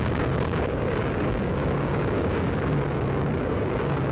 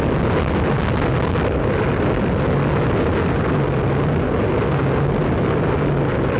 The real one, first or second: second